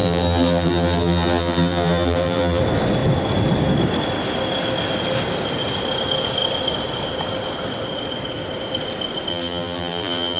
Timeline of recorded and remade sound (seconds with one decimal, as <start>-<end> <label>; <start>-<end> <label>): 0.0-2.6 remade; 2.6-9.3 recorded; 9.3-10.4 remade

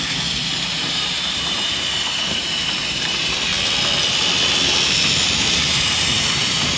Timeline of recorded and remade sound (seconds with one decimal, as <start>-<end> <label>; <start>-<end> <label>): 0.0-3.5 remade; 3.5-5.4 recorded; 5.4-6.8 remade

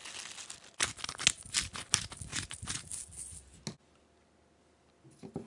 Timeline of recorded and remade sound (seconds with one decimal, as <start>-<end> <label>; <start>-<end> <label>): 0.0-2.3 recorded; 2.3-3.0 remade; 3.0-5.5 recorded

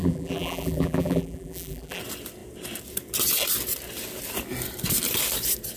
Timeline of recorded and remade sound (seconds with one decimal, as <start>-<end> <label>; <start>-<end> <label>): 0.0-2.0 remade; 2.0-5.8 recorded

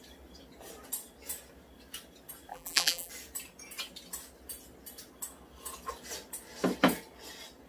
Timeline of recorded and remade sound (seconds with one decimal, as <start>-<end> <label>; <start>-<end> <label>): 0.0-2.5 recorded; 2.5-3.1 remade; 3.1-7.7 recorded

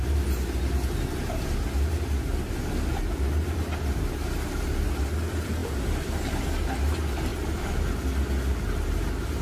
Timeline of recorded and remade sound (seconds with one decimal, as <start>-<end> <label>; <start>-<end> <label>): 0.0-7.3 recorded; 7.3-7.8 remade; 7.8-9.4 recorded

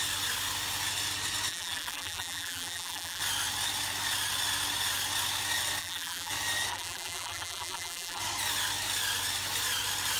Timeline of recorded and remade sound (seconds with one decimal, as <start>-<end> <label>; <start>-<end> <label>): 0.0-1.5 recorded; 1.5-3.2 remade; 3.2-5.8 recorded; 5.8-6.3 remade; 6.3-6.7 recorded; 6.7-8.2 remade; 8.2-10.2 recorded

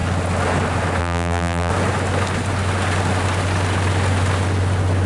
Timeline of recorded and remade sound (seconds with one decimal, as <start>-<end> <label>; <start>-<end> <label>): 0.0-1.0 recorded; 1.0-1.7 remade; 1.7-5.1 recorded